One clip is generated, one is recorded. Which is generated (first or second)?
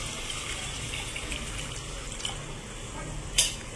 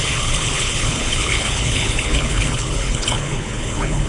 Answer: second